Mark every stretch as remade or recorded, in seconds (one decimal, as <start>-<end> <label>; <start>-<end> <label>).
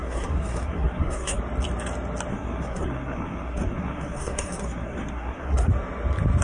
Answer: 0.0-1.4 remade; 1.4-2.3 recorded; 2.3-5.7 remade; 5.7-6.4 recorded